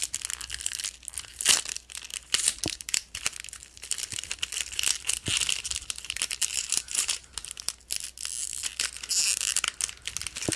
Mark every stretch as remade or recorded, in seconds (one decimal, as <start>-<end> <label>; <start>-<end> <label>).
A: 0.0-2.1 recorded; 2.1-3.2 remade; 3.2-6.5 recorded; 6.5-7.7 remade; 7.7-10.6 recorded